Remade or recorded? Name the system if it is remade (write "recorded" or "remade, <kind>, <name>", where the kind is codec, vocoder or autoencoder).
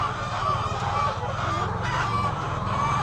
recorded